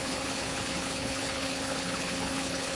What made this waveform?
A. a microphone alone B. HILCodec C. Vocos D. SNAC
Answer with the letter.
B